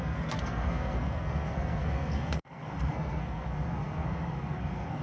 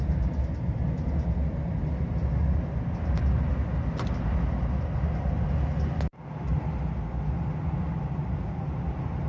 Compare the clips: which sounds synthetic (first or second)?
first